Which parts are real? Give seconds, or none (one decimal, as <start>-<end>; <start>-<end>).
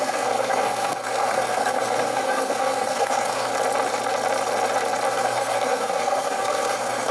3.5-5.1